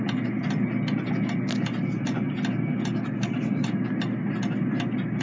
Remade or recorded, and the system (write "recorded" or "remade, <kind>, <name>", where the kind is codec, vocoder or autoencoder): recorded